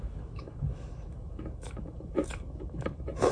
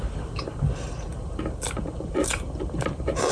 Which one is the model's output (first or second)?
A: first